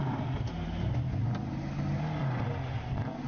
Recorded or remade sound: recorded